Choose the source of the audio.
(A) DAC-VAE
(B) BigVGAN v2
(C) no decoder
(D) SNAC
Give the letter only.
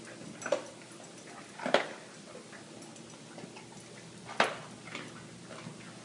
C